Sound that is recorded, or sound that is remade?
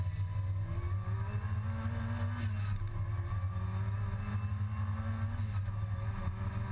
recorded